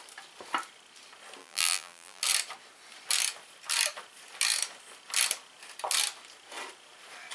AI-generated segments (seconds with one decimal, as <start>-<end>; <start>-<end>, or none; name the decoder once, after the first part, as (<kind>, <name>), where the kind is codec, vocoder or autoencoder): 1.4-2.2 (vocoder, BigVGAN v2)